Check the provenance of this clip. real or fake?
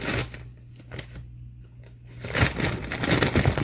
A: real